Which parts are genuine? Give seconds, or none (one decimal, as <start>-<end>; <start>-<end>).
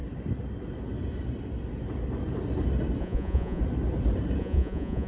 0.0-3.0; 3.6-4.4